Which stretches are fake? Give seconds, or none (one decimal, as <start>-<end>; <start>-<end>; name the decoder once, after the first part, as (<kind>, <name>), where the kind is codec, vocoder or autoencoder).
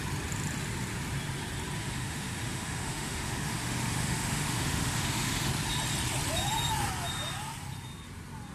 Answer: 1.8-5.5 (autoencoder, DAC-VAE)